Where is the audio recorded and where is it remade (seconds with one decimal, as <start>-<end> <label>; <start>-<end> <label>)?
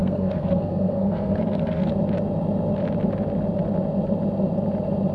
0.0-1.9 remade; 1.9-5.1 recorded